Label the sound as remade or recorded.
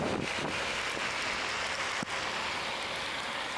recorded